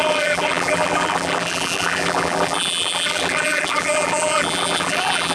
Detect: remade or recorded remade